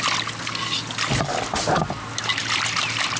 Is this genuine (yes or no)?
yes